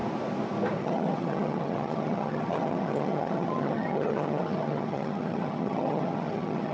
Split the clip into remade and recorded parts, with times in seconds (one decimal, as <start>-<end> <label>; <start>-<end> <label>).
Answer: 0.0-0.8 recorded; 0.8-6.7 remade